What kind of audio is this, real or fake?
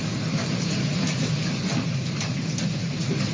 real